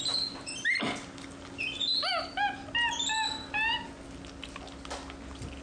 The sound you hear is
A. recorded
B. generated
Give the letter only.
A